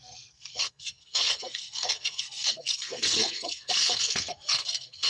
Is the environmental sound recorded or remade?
remade